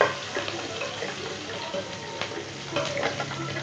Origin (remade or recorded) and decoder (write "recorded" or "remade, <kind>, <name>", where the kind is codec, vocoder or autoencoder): recorded